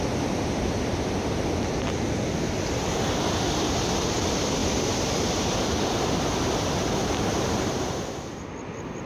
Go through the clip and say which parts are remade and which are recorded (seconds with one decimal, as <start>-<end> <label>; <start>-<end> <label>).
0.0-9.1 recorded